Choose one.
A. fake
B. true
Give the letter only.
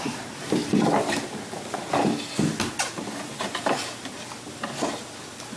B